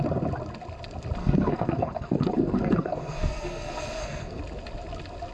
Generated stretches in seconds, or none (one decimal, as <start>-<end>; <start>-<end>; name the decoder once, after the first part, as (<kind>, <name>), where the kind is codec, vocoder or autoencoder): 1.2-4.4 (codec, SNAC)